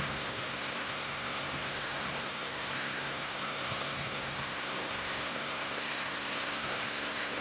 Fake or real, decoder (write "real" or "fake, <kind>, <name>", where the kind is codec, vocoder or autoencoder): fake, codec, SNAC